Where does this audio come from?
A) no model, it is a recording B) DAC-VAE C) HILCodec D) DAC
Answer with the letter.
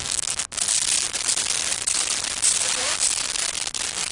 A